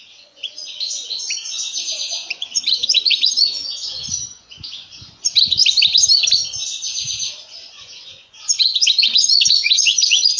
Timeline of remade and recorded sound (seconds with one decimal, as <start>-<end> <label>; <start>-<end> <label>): 0.0-5.6 remade; 5.6-7.3 recorded; 7.3-10.4 remade